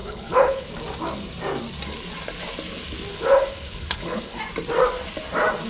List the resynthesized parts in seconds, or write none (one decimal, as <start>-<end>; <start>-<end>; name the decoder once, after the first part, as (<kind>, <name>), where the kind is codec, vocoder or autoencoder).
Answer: 0.0-0.7 (codec, HILCodec); 3.1-4.4

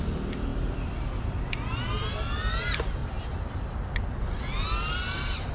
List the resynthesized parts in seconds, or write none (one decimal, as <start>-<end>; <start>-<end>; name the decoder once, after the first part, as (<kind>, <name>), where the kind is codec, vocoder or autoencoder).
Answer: 0.5-1.4 (vocoder, BigVGAN v2)

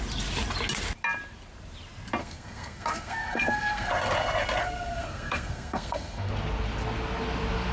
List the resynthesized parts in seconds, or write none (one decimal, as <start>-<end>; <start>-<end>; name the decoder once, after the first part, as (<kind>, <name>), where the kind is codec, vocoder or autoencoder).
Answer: 2.2-3.9 (codec, SNAC); 4.6-6.3

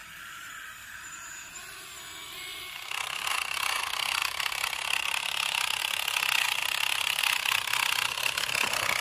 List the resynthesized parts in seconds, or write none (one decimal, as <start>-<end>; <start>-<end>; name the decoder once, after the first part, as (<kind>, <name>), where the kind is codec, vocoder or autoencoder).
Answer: 0.0-1.2 (vocoder, BigVGAN v2); 4.2-5.8

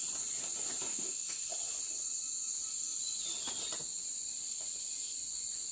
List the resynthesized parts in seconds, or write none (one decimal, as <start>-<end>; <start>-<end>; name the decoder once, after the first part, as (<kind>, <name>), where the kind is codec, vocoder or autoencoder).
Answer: 0.9-1.5 (autoencoder, DAC-VAE)

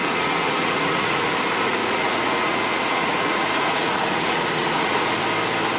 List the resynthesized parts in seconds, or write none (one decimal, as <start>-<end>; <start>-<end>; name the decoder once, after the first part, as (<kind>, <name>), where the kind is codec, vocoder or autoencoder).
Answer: 0.0-1.3 (vocoder, Vocos); 1.8-5.2

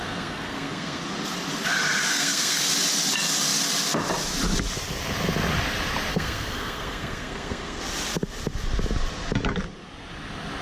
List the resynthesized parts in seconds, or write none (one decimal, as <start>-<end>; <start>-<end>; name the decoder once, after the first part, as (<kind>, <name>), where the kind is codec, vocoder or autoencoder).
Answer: 0.0-1.0 (codec, SNAC); 2.1-2.7; 6.1-7.8

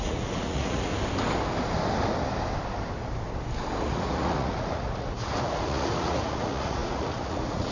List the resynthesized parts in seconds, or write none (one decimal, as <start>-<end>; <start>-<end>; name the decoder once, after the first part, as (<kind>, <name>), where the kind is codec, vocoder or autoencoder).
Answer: 0.0-0.9 (vocoder, Vocos); 3.8-7.7